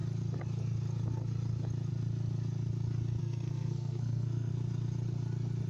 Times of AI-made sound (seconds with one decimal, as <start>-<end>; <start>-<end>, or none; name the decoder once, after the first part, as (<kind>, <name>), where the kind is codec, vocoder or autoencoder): 3.2-4.5 (codec, SNAC)